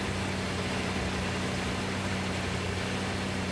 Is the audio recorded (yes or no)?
yes